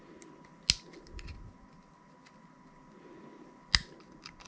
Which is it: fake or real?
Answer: real